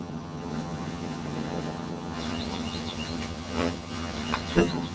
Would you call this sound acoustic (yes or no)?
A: no